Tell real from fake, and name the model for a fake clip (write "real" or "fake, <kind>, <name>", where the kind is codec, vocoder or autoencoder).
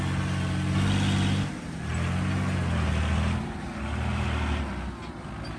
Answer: real